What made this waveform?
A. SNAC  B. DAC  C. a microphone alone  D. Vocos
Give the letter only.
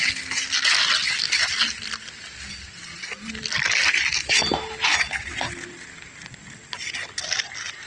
C